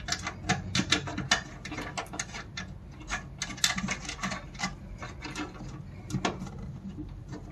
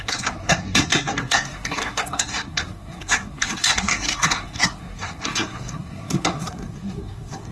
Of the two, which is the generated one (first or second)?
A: second